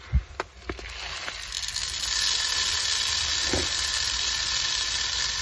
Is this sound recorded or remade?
recorded